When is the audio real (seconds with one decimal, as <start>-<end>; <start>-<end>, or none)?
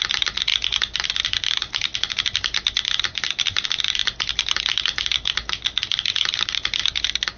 0.0-7.4